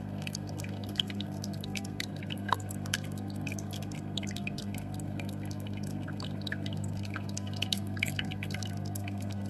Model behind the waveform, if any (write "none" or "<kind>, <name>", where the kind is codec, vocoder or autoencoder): codec, SNAC